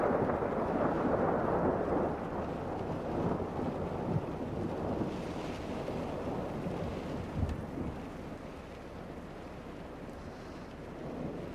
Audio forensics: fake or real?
real